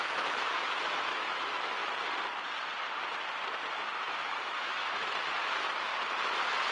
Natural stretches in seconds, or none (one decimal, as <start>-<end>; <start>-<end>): 1.8-3.9; 5.9-6.7